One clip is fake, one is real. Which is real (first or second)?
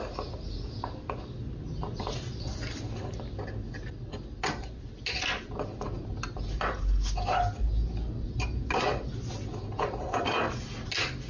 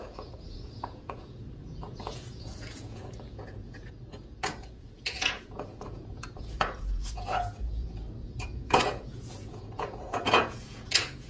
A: first